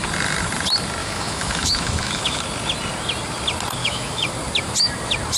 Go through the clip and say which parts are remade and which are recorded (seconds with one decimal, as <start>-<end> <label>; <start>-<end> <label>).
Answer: 0.0-1.0 recorded; 1.0-2.4 remade; 2.4-3.8 recorded; 3.8-4.3 remade; 4.3-5.4 recorded